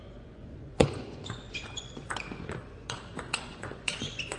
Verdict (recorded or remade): remade